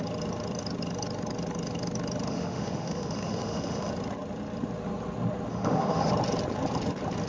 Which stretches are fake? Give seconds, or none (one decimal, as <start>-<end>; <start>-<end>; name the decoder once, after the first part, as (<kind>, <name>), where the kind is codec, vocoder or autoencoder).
2.3-3.9 (autoencoder, DAC-VAE); 5.5-6.1